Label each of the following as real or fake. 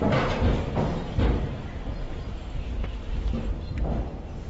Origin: real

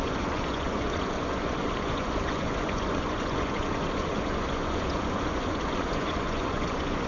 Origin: fake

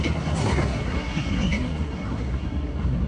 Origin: fake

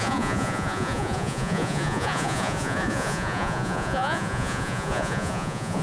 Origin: fake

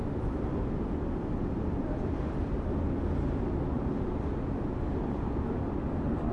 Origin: real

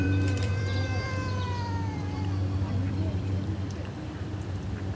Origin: fake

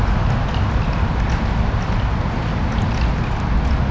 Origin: real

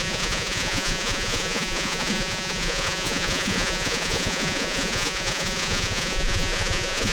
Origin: fake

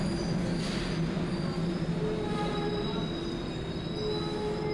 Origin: real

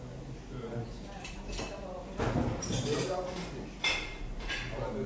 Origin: real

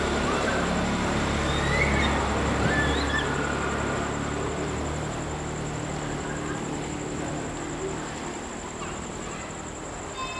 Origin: real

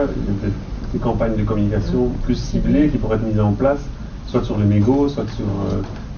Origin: real